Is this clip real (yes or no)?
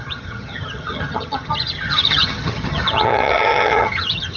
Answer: no